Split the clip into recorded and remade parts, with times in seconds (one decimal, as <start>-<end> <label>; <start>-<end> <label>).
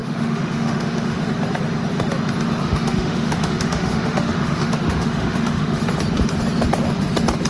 0.0-1.3 remade; 1.3-2.6 recorded; 2.6-5.8 remade; 5.8-7.5 recorded